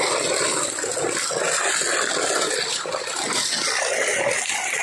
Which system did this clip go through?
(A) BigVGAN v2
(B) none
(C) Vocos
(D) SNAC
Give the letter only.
B